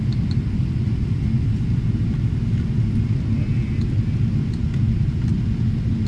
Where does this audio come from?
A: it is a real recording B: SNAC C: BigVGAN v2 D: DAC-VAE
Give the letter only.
A